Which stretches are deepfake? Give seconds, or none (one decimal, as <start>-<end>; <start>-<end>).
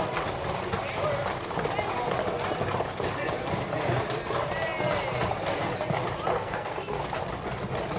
6.3-7.0